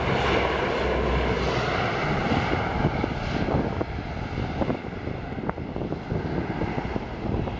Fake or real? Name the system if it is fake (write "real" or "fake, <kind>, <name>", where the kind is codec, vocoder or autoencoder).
real